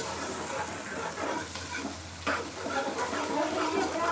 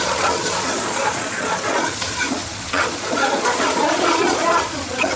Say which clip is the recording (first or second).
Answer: first